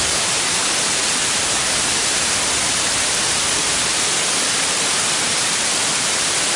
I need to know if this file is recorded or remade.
recorded